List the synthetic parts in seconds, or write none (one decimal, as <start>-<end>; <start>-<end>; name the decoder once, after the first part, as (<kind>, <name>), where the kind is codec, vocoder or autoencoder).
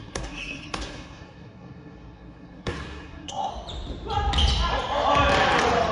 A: 0.0-3.5 (codec, SNAC)